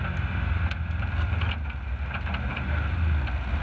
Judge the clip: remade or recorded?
recorded